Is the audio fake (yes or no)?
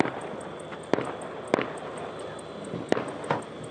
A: no